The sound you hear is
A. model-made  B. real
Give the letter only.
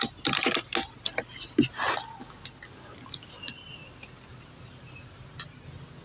B